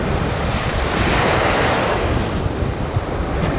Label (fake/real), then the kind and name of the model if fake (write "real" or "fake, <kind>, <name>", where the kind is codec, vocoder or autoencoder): real